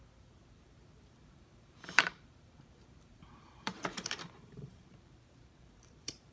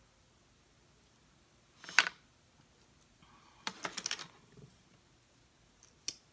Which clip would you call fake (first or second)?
first